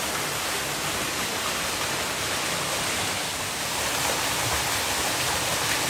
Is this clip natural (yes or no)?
yes